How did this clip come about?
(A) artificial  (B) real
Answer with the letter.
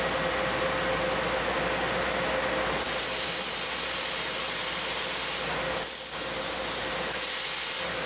B